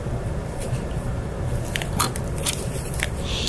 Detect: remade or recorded remade